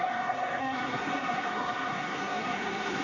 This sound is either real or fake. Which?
fake